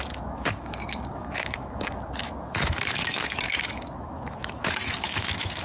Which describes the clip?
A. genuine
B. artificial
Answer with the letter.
B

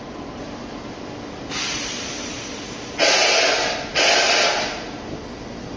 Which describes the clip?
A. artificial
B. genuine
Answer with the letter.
B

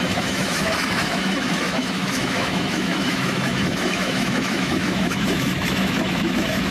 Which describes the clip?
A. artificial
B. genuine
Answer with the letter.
A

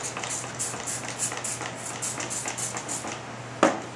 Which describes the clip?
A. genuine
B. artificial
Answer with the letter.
A